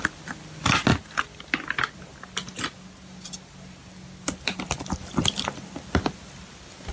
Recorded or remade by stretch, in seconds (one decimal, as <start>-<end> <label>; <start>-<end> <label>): 0.0-6.9 recorded